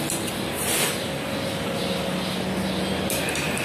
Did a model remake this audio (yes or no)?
no